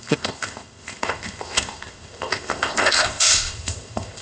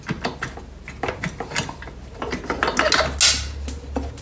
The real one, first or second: second